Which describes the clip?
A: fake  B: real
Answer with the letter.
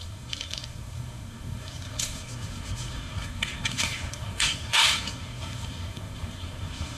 A